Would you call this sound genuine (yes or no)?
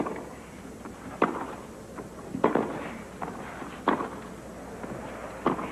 yes